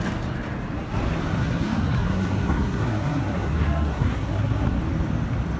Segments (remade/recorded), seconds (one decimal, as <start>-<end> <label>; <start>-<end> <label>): 0.0-1.4 recorded; 1.4-4.8 remade; 4.8-5.6 recorded